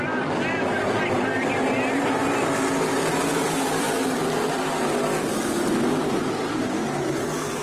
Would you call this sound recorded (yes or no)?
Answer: no